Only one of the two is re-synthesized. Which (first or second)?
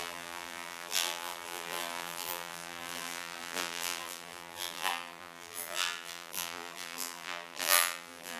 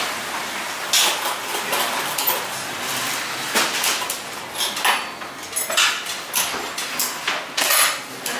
first